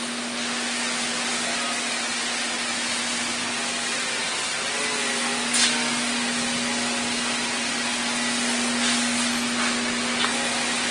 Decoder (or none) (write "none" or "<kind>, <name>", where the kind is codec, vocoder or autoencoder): none